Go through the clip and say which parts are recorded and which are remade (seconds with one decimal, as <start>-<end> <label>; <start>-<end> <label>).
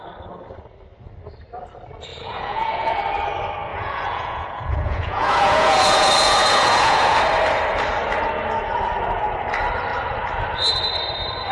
0.0-2.1 recorded; 2.1-3.0 remade; 3.0-3.7 recorded; 3.7-7.2 remade; 7.2-11.5 recorded